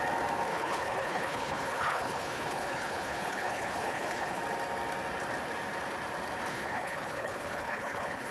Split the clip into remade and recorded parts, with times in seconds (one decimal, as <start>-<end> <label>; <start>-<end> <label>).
0.0-0.5 recorded; 0.5-4.4 remade; 4.4-6.5 recorded; 6.5-8.3 remade